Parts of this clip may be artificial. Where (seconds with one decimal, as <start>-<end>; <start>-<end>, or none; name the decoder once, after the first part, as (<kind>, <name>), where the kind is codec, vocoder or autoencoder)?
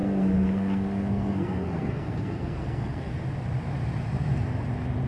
0.0-3.1 (codec, SNAC)